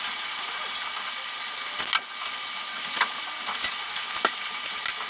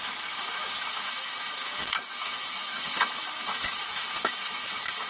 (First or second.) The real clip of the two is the first